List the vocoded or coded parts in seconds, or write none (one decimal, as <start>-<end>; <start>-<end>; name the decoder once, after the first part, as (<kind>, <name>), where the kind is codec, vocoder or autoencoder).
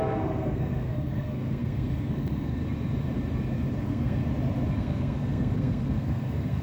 0.0-2.6 (codec, SNAC); 3.8-4.2; 4.7-6.6